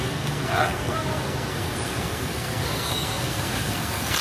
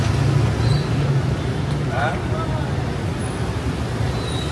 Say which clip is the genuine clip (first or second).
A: second